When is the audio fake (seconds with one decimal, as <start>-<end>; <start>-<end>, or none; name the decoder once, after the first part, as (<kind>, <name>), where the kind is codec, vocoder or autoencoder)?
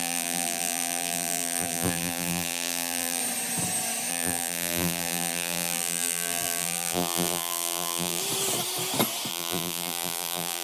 0.0-3.2 (vocoder, BigVGAN v2); 4.1-8.2; 9.3-10.6